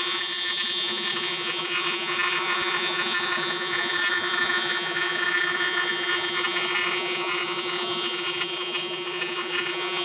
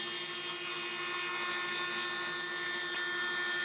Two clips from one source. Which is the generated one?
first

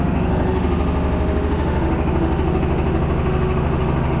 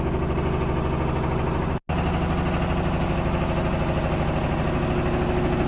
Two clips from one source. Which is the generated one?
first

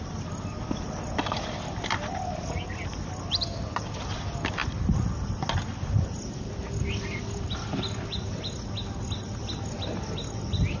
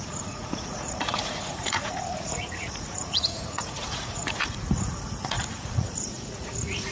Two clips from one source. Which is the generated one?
second